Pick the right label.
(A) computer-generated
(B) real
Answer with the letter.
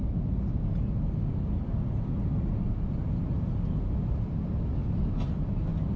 B